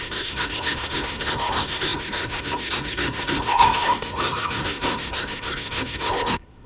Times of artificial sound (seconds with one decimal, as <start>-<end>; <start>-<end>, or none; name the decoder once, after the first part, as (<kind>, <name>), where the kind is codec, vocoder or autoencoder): 0.0-6.7 (codec, SNAC)

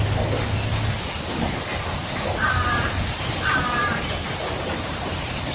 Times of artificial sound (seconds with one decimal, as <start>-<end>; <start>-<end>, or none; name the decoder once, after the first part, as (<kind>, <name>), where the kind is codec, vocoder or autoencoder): 1.7-3.3 (vocoder, BigVGAN v2); 3.8-5.5